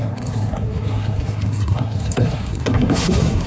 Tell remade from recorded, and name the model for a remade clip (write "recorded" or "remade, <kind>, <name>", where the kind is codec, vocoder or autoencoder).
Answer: remade, codec, SNAC